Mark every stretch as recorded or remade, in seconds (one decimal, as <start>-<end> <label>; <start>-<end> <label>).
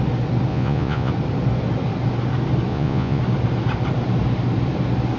0.0-0.5 recorded; 0.5-1.1 remade; 1.1-2.7 recorded; 2.7-3.2 remade; 3.2-5.2 recorded